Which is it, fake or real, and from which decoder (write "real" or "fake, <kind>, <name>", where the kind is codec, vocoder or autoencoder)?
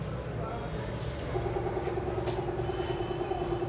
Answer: real